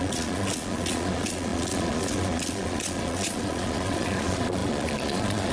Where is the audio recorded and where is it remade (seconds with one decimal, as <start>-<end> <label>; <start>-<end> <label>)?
0.0-5.5 remade